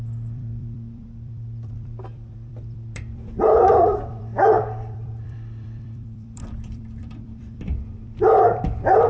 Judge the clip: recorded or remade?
remade